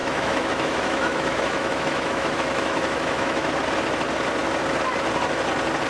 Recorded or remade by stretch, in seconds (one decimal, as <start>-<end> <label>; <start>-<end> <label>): 0.0-3.5 remade; 3.5-5.9 recorded